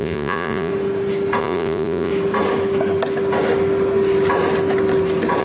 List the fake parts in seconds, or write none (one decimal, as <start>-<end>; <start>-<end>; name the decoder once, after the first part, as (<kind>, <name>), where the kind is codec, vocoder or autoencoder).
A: 0.0-0.7 (vocoder, Vocos); 1.4-2.1